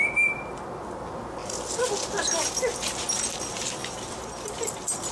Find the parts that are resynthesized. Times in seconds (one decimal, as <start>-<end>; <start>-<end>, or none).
none